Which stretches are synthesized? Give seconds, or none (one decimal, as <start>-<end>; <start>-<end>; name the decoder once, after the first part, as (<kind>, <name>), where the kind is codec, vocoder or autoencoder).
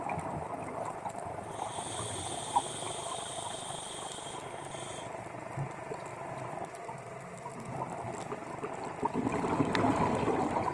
none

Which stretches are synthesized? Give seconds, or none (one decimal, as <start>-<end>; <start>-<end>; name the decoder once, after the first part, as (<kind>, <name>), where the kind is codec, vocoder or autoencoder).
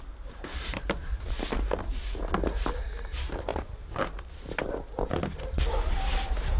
none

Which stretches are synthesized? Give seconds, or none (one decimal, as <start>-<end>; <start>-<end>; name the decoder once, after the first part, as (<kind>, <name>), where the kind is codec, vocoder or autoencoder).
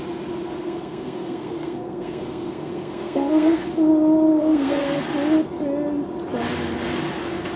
0.6-3.6 (codec, SNAC); 4.3-5.0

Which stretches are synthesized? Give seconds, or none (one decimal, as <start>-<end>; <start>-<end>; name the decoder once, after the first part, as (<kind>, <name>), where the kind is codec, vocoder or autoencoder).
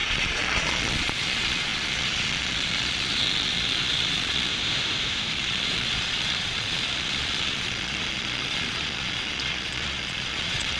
0.0-4.5 (vocoder, Vocos); 5.3-10.8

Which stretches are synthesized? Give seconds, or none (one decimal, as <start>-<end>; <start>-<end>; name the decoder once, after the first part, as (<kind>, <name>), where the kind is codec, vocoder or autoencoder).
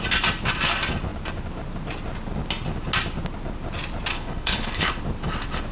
4.1-5.0 (codec, HILCodec)